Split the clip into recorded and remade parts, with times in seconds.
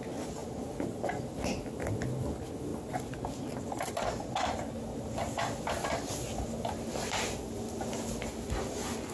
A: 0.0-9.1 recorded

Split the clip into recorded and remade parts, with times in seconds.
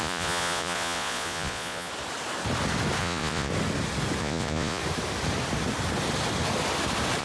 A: 0.0-1.9 remade; 1.9-3.0 recorded; 3.0-3.5 remade; 3.5-4.2 recorded; 4.2-4.8 remade; 4.8-7.2 recorded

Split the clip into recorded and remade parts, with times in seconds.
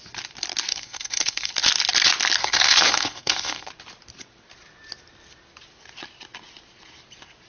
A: 0.0-0.7 recorded; 0.7-1.5 remade; 1.5-2.4 recorded; 2.4-3.7 remade; 3.7-7.5 recorded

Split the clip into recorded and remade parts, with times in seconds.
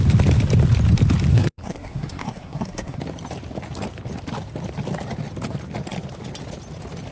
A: 0.0-1.3 recorded; 1.3-3.0 remade; 3.0-7.1 recorded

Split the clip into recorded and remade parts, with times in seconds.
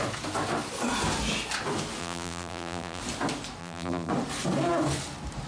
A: 0.0-2.0 recorded; 2.0-3.0 remade; 3.0-3.6 recorded; 3.6-4.1 remade; 4.1-5.5 recorded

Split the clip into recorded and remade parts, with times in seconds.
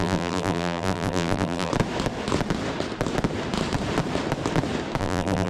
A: 0.0-1.7 remade; 1.7-5.0 recorded; 5.0-5.5 remade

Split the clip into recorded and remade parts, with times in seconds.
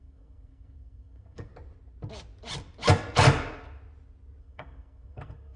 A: 0.0-1.5 remade; 1.5-4.4 recorded; 4.4-5.6 remade